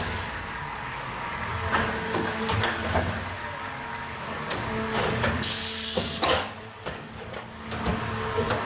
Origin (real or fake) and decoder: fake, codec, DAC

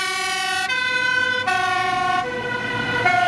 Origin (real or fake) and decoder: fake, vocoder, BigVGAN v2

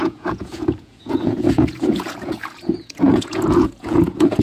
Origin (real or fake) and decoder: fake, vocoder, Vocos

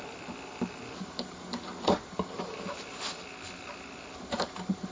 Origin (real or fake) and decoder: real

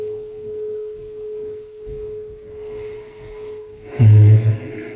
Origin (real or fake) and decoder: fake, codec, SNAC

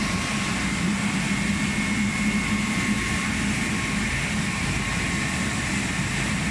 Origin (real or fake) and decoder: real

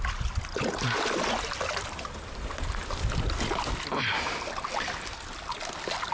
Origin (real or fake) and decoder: real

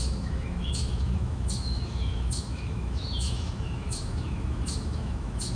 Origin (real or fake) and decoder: fake, autoencoder, DAC-VAE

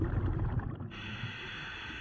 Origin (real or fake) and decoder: real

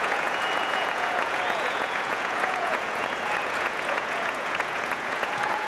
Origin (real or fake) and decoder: fake, vocoder, Vocos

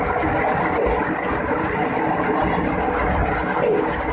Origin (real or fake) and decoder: real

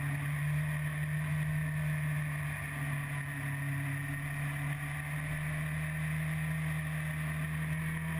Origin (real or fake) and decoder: real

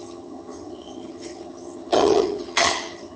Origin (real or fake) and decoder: fake, vocoder, HiFi-GAN